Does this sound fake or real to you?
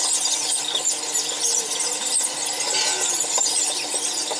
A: real